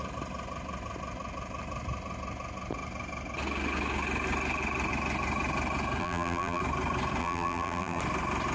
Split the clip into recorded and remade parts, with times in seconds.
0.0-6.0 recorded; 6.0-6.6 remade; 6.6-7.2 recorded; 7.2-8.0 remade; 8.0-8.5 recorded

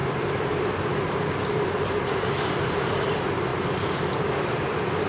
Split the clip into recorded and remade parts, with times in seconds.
0.0-3.1 remade; 3.1-5.1 recorded

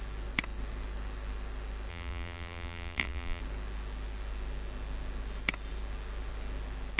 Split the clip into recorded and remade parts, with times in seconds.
0.0-1.9 recorded; 1.9-3.4 remade; 3.4-7.0 recorded

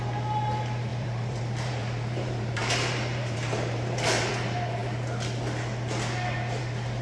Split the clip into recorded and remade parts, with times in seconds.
0.0-0.9 recorded; 0.9-4.3 remade; 4.3-7.0 recorded

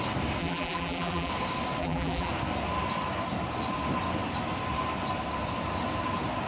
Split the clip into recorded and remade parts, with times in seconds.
0.0-0.4 recorded; 0.4-1.3 remade; 1.3-1.8 recorded; 1.8-2.3 remade; 2.3-6.5 recorded